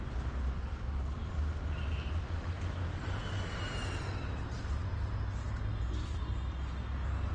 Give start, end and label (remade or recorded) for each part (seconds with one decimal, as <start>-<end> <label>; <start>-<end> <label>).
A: 0.0-3.0 recorded; 3.0-4.0 remade; 4.0-7.3 recorded